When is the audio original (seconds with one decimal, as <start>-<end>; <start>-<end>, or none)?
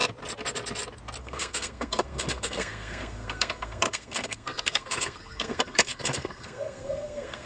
0.0-1.2